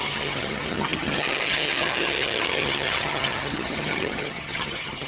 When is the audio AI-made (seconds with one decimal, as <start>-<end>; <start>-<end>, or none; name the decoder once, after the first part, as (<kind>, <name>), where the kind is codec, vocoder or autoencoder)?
0.0-5.1 (vocoder, HiFi-GAN)